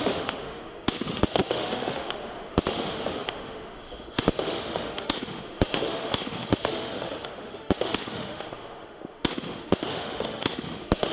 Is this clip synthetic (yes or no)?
yes